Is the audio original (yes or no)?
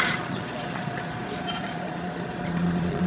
no